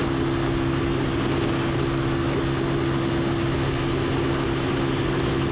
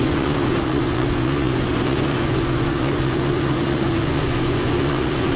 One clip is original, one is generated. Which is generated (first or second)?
second